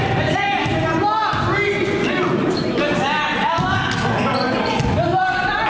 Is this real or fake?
real